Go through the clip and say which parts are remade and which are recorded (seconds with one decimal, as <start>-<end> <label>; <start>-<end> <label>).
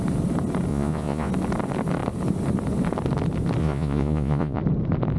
0.0-0.7 recorded; 0.7-1.3 remade; 1.3-3.6 recorded; 3.6-4.6 remade; 4.6-5.2 recorded